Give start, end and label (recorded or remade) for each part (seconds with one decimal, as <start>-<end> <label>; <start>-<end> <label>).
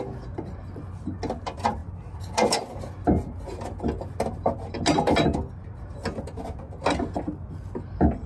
0.0-8.3 recorded